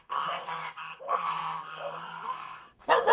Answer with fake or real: fake